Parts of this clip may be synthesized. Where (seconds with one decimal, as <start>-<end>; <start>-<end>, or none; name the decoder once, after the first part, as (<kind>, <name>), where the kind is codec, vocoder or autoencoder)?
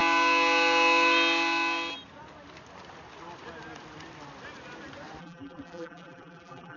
5.2-6.8 (vocoder, BigVGAN v2)